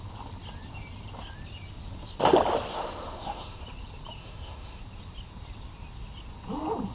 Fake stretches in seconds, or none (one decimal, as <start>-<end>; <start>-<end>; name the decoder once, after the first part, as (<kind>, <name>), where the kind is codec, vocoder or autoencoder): 2.7-3.6 (autoencoder, DAC-VAE); 4.2-4.8